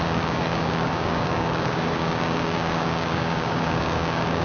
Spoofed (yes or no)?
yes